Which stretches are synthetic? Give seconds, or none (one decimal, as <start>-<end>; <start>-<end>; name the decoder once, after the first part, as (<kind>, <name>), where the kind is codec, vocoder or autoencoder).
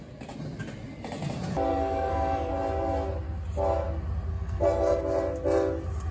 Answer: 1.7-2.5 (codec, SNAC); 4.3-5.0